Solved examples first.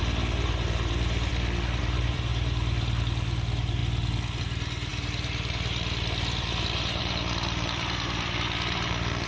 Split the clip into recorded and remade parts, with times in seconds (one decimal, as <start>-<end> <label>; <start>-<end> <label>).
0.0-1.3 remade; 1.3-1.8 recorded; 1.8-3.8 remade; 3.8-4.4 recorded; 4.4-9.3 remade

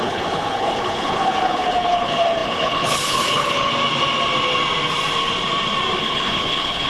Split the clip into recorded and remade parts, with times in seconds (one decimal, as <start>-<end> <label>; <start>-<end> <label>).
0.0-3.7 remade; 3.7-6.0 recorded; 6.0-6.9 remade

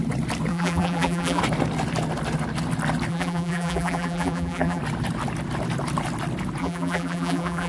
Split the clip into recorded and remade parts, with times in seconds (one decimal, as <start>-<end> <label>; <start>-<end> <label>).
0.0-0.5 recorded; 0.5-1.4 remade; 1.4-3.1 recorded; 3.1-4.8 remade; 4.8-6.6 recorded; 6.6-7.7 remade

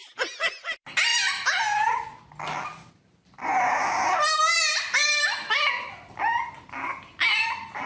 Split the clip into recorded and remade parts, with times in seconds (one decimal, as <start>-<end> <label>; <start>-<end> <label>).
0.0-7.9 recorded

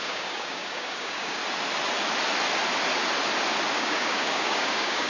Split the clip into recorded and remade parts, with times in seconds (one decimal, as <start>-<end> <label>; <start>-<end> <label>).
0.0-1.4 remade; 1.4-3.7 recorded; 3.7-5.1 remade

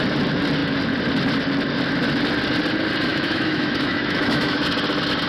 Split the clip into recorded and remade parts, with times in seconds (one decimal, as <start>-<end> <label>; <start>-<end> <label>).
0.0-3.1 recorded; 3.1-4.6 remade; 4.6-5.3 recorded

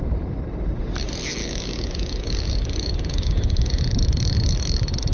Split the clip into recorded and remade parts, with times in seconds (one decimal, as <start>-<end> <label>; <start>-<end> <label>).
0.0-1.4 recorded; 1.4-3.8 remade; 3.8-5.1 recorded

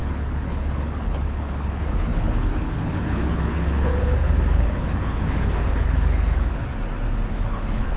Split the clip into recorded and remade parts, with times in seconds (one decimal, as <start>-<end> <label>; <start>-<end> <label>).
0.0-6.7 remade; 6.7-7.3 recorded; 7.3-8.0 remade